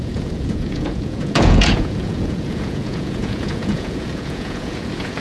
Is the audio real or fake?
fake